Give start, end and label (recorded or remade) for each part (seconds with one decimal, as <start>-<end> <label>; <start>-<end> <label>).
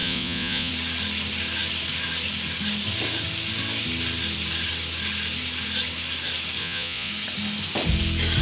0.0-0.7 remade; 0.7-6.6 recorded; 6.6-7.1 remade; 7.1-8.4 recorded